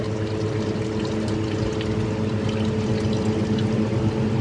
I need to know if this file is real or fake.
real